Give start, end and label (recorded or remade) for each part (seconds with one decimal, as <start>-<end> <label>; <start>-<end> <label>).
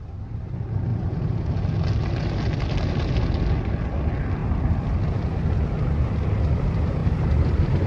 0.0-0.9 recorded; 0.9-1.5 remade; 1.5-7.0 recorded; 7.0-7.9 remade